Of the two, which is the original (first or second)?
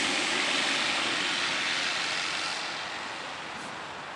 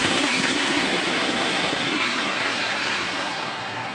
first